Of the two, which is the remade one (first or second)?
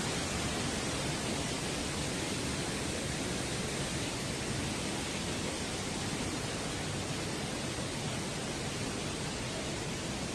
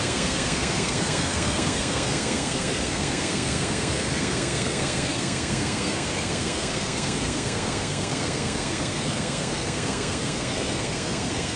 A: second